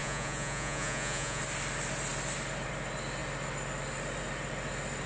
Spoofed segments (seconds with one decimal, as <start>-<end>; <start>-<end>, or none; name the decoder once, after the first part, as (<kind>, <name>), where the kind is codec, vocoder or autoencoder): 0.0-1.4 (vocoder, Vocos)